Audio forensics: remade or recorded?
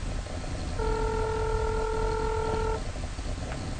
recorded